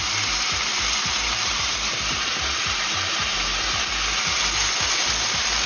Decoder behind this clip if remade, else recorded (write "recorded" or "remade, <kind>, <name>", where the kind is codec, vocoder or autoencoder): recorded